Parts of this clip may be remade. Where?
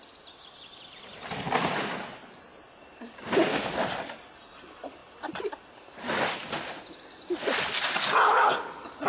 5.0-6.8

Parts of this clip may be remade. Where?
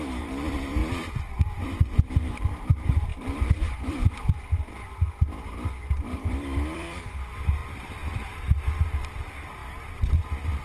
0.0-9.6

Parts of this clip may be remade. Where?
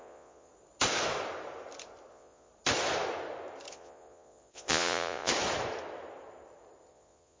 0.0-0.5; 2.1-2.5; 3.7-5.3; 6.9-7.4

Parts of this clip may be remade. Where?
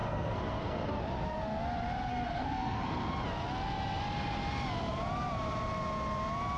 0.0-1.0; 2.1-3.1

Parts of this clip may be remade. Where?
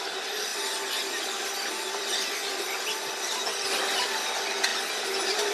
none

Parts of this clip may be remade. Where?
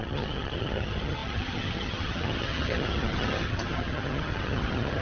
0.0-5.0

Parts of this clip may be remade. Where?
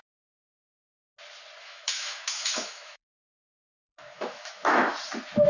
1.6-4.9